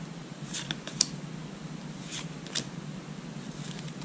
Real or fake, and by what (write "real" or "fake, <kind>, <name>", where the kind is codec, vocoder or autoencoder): real